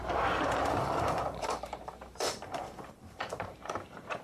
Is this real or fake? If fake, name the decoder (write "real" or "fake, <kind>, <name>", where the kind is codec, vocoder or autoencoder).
fake, vocoder, BigVGAN v2